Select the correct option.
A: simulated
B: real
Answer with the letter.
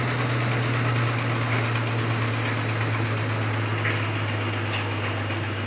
B